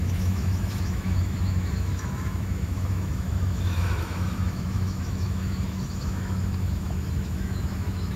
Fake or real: fake